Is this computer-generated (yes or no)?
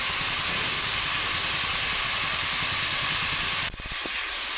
no